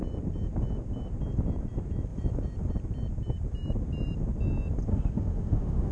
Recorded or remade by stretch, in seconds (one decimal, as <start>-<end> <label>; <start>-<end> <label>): 0.0-4.9 recorded; 4.9-5.9 remade